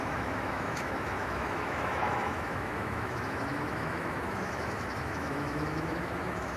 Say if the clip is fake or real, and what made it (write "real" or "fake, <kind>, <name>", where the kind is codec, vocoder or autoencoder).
fake, autoencoder, DAC-VAE